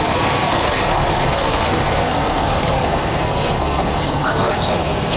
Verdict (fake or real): fake